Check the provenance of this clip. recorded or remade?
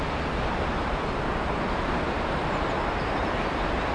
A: recorded